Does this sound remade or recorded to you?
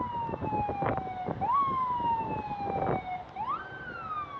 recorded